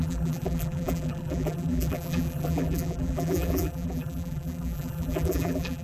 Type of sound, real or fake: fake